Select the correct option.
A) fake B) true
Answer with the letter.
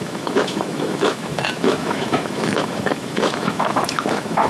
A